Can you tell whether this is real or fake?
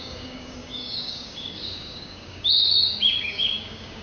fake